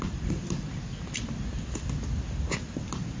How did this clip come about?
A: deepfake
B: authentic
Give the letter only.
B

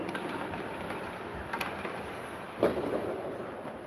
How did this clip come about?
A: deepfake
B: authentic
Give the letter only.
B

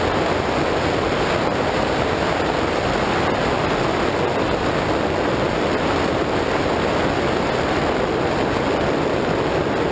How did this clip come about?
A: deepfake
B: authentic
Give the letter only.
B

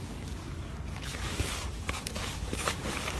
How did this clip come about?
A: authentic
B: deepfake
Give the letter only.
B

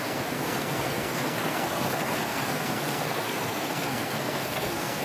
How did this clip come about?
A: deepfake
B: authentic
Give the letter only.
A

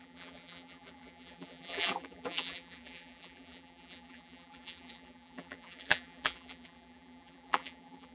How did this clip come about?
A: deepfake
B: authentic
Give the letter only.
A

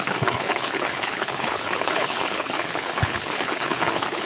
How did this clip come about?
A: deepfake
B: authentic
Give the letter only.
A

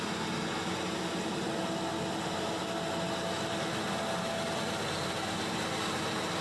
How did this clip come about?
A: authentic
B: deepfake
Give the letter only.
A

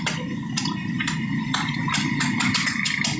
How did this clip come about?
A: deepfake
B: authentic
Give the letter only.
B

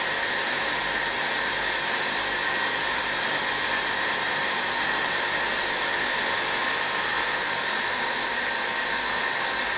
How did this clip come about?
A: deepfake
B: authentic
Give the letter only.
A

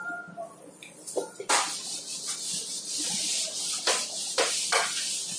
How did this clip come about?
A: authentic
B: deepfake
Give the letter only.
B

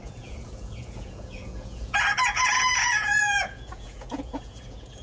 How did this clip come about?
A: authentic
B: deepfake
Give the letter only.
B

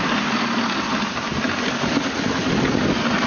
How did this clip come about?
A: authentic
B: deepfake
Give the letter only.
A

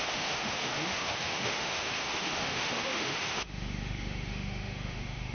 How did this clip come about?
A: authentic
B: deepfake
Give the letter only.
B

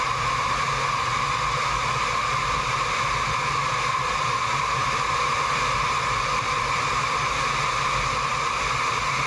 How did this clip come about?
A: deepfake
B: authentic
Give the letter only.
B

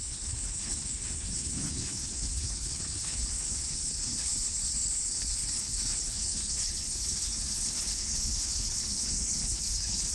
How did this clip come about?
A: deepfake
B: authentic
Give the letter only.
A